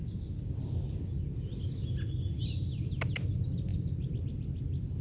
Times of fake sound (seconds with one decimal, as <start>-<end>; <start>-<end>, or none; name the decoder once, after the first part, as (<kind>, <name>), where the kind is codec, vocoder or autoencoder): none